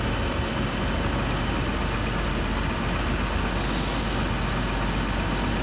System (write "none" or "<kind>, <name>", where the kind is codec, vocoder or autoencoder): none